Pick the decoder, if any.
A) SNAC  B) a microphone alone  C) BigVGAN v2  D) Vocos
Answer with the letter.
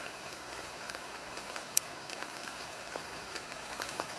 A